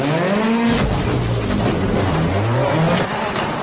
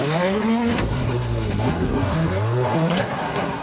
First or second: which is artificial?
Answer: second